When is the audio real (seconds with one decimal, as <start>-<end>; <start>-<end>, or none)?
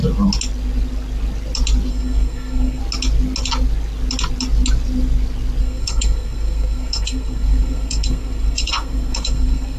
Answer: 0.0-1.9; 2.8-5.6